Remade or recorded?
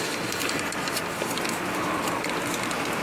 recorded